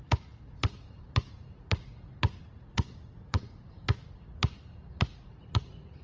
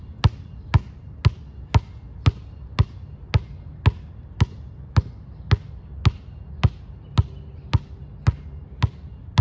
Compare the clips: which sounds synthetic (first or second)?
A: first